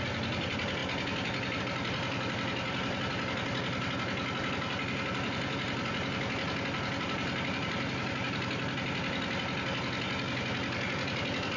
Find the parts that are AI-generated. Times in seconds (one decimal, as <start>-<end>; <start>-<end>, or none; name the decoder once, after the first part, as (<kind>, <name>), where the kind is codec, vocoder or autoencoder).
none